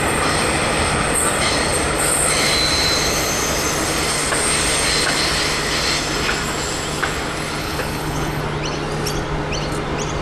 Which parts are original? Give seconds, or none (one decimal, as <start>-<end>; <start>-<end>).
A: 0.0-7.6; 8.4-10.2